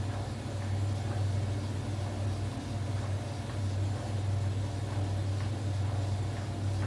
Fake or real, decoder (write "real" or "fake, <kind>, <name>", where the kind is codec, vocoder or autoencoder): real